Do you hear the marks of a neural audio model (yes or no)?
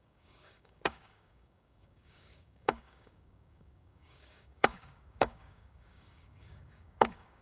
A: yes